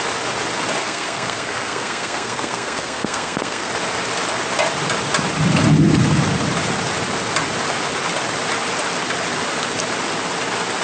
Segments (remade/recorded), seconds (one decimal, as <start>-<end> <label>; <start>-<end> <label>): 0.0-0.8 recorded; 0.8-3.7 remade; 3.7-10.8 recorded